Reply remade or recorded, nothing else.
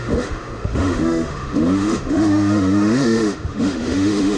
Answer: remade